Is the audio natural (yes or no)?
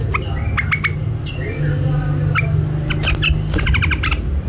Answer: yes